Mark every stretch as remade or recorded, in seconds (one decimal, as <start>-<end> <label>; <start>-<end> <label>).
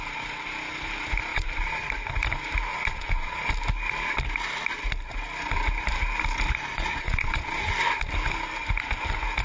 0.0-1.3 recorded; 1.3-1.9 remade; 1.9-2.7 recorded; 2.7-3.5 remade; 3.5-6.7 recorded; 6.7-7.7 remade; 7.7-9.4 recorded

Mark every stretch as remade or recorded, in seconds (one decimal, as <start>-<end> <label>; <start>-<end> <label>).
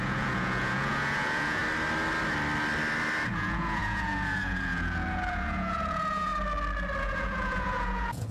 0.0-1.6 remade; 1.6-3.3 recorded; 3.3-6.3 remade; 6.3-7.0 recorded; 7.0-8.3 remade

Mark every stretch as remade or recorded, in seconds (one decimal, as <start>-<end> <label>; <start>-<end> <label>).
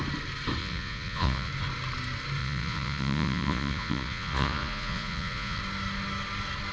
0.0-0.6 recorded; 0.6-1.5 remade; 1.5-2.4 recorded; 2.4-5.6 remade; 5.6-6.7 recorded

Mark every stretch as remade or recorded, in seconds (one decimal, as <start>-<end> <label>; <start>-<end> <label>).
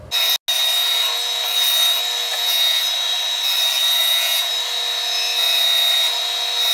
0.0-2.2 recorded; 2.2-2.8 remade; 2.8-4.0 recorded; 4.0-4.5 remade; 4.5-6.7 recorded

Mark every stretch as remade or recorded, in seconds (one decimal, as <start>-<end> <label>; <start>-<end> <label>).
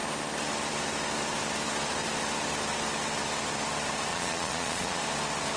0.0-4.1 recorded; 4.1-5.0 remade; 5.0-5.6 recorded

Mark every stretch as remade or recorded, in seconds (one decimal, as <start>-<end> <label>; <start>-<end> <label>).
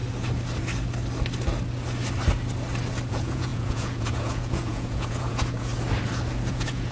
0.0-3.1 recorded; 3.1-5.7 remade; 5.7-6.5 recorded; 6.5-6.9 remade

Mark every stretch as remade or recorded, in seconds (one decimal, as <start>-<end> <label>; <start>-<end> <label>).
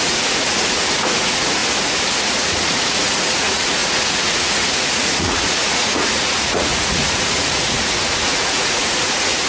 0.0-1.6 remade; 1.6-2.2 recorded; 2.2-9.5 remade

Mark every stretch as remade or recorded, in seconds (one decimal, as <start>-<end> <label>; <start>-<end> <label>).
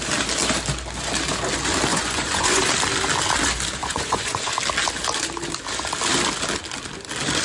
0.0-1.9 recorded; 1.9-2.6 remade; 2.6-3.8 recorded; 3.8-4.5 remade; 4.5-7.4 recorded